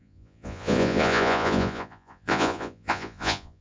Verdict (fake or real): fake